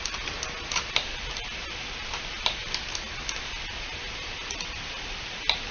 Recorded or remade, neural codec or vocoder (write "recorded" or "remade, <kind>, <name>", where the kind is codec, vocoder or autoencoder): recorded